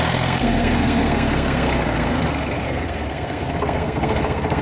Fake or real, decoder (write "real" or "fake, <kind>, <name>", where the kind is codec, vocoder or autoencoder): fake, codec, SNAC